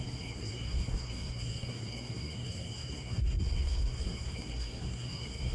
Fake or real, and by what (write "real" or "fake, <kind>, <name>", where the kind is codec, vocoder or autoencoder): fake, codec, SNAC